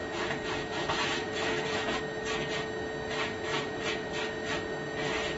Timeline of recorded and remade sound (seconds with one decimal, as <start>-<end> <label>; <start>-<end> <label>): 0.0-2.0 remade; 2.0-3.5 recorded; 3.5-4.1 remade; 4.1-5.4 recorded